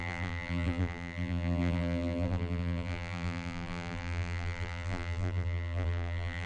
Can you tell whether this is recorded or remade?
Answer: remade